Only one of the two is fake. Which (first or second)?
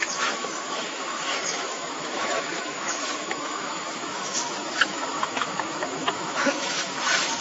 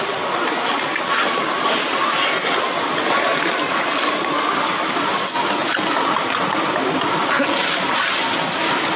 first